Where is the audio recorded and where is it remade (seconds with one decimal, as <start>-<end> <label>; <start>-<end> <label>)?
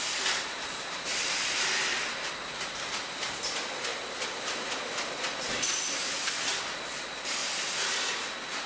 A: 0.0-8.7 recorded